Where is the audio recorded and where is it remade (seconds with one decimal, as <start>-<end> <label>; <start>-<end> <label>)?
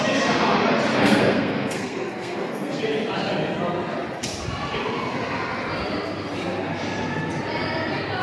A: 0.0-0.9 recorded; 0.9-2.8 remade; 2.8-8.2 recorded